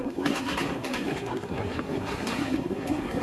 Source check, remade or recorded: remade